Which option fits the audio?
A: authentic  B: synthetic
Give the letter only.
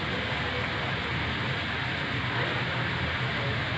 A